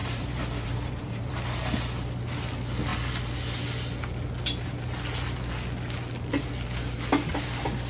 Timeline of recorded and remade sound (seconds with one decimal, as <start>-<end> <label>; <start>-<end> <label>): 0.0-1.3 remade; 1.3-7.9 recorded